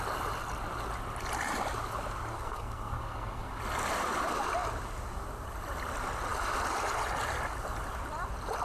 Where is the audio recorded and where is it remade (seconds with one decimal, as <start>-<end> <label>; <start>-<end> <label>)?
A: 0.0-2.3 recorded; 2.3-3.6 remade; 3.6-8.6 recorded